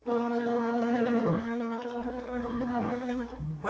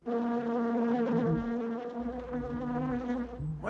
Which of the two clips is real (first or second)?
second